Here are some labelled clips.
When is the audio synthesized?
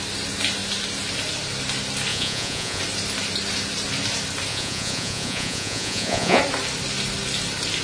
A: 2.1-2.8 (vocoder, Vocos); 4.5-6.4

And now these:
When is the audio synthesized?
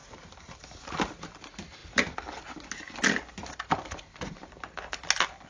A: 0.0-0.6 (vocoder, BigVGAN v2)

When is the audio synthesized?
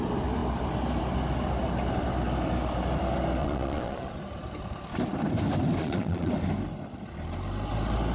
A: 3.4-4.1 (vocoder, Vocos); 5.8-6.3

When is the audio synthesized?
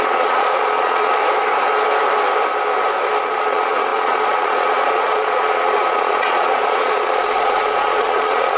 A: 0.0-1.2 (vocoder, Vocos); 3.2-8.6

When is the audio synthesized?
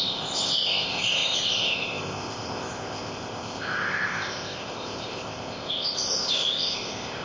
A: 0.0-7.2 (codec, ZipCodec)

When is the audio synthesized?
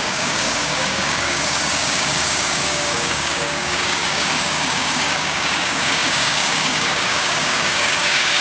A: 0.0-8.4 (codec, DAC)